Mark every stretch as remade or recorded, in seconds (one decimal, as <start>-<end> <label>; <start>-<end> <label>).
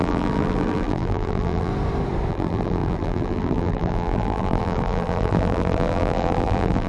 0.0-1.7 remade; 1.7-2.3 recorded; 2.3-6.9 remade